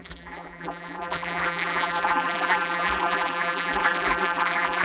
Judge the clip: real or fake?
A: fake